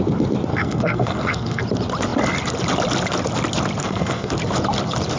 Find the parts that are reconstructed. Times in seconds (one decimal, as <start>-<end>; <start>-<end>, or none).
0.5-1.6; 3.8-4.3